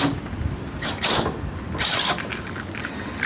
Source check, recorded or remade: recorded